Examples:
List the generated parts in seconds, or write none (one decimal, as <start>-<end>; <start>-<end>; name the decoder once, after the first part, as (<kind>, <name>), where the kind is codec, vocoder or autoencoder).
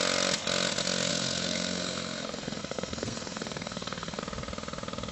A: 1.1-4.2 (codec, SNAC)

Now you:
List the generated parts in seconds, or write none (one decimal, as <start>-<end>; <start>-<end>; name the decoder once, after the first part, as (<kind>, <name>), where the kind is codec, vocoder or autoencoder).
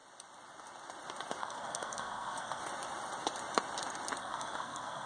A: 1.4-2.6 (codec, SNAC); 4.2-5.1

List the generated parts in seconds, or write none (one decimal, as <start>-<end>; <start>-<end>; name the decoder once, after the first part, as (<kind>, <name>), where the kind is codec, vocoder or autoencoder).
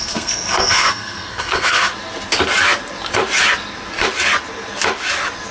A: 0.0-1.9 (codec, SNAC)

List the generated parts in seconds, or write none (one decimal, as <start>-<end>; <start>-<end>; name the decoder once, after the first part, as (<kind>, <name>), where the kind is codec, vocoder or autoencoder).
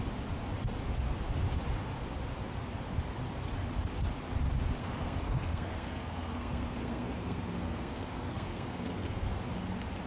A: 4.8-9.4 (codec, SNAC)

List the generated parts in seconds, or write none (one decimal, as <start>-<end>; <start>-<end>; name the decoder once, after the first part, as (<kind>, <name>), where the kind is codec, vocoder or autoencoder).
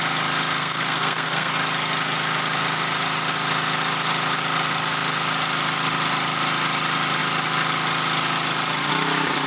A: 0.6-1.5 (codec, SNAC)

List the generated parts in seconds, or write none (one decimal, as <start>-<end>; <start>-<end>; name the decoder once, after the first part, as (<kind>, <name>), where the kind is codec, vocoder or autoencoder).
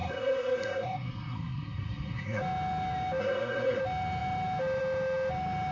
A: 0.0-2.4 (codec, SNAC); 3.2-3.8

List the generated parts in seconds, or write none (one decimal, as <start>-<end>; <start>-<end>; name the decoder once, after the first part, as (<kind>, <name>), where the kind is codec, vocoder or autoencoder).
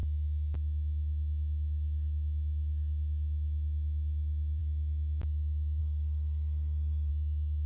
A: 5.8-7.1 (codec, SNAC)